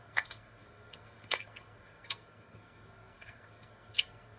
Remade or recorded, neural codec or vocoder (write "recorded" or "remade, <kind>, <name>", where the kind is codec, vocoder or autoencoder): remade, codec, SNAC